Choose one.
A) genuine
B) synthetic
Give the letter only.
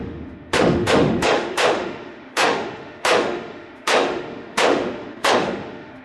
B